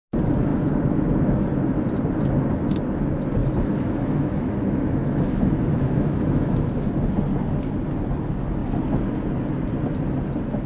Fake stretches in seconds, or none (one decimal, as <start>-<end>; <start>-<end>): 3.4-6.9